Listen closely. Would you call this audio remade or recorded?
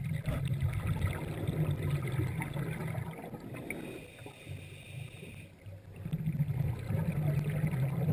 recorded